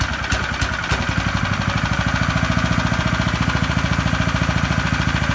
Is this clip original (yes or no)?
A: yes